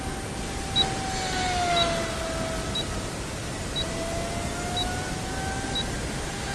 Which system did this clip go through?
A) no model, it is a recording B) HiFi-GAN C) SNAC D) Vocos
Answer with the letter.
A